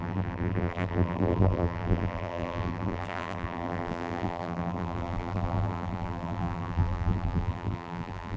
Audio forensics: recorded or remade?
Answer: remade